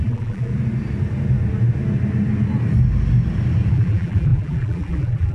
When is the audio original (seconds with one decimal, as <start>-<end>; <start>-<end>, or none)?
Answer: 0.5-3.7